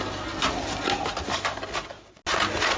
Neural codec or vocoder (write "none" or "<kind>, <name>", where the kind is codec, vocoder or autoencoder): none